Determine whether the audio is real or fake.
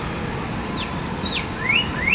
real